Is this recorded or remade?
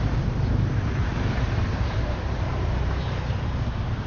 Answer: remade